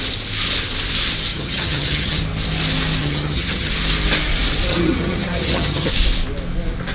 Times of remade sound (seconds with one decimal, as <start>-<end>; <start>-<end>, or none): 1.3-2.2; 3.0-3.7; 4.7-5.9